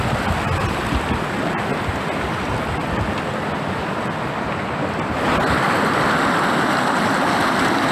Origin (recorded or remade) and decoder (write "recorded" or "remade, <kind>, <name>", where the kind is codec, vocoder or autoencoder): recorded